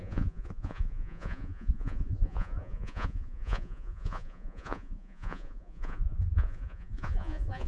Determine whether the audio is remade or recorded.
remade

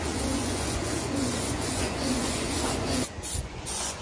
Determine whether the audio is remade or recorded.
remade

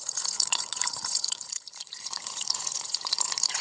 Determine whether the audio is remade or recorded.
remade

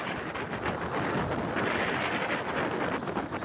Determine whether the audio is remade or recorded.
recorded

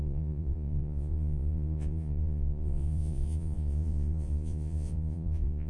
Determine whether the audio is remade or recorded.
remade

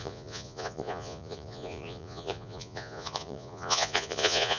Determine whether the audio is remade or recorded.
remade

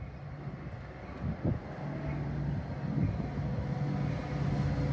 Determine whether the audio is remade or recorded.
recorded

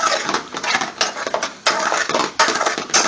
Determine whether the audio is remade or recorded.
recorded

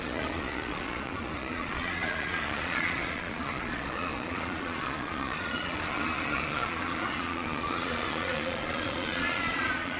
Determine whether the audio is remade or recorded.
remade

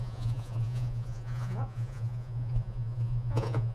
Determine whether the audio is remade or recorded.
remade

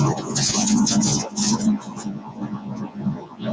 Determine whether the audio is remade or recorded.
remade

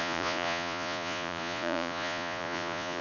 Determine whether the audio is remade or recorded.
remade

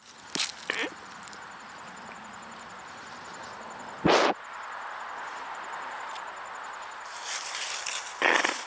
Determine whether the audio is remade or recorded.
recorded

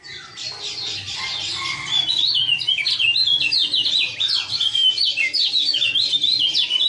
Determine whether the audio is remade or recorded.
recorded